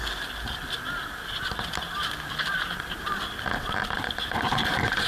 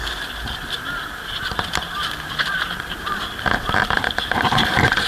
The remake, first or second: second